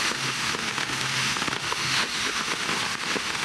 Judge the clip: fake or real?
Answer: fake